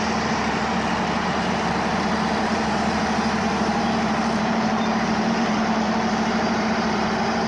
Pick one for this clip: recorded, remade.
remade